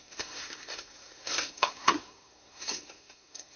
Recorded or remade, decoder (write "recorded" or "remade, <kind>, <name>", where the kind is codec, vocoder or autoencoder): remade, codec, SNAC